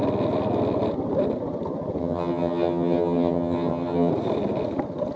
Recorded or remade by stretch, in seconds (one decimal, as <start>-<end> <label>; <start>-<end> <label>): 0.0-2.0 recorded; 2.0-4.1 remade; 4.1-5.2 recorded